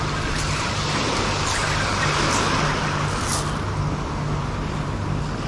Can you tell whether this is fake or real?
real